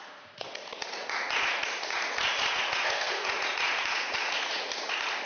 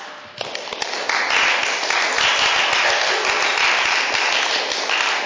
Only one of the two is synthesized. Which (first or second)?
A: first